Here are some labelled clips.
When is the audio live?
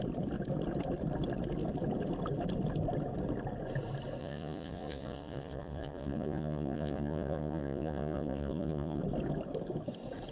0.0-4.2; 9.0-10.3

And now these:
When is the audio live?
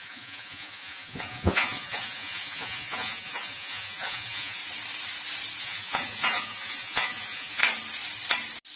4.6-5.6; 7.6-8.8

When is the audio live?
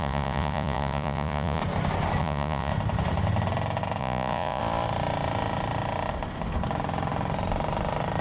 1.6-2.2; 2.7-4.0; 4.6-8.2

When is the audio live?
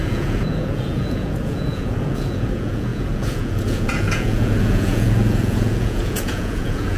none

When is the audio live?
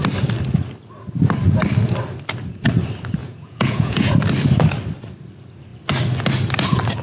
0.0-3.2; 4.1-7.0